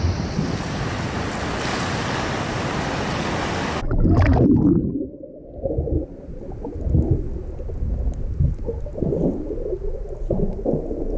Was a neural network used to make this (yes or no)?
no